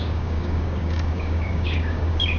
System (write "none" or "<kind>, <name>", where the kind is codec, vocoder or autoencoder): codec, DAC